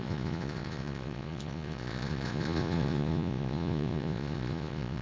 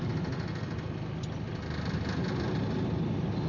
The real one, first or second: second